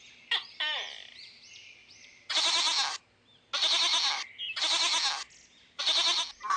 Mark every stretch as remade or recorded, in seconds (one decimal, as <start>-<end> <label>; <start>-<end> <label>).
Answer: 0.0-6.6 recorded